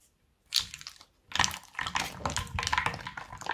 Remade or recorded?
recorded